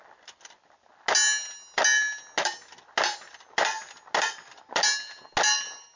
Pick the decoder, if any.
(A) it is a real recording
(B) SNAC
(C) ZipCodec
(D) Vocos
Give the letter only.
A